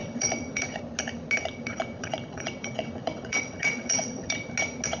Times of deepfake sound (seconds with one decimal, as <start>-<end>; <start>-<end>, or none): 0.0-0.8; 1.5-4.5